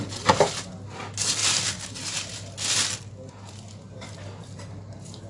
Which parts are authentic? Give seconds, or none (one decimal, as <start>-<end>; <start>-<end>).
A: 0.0-1.4; 1.9-5.3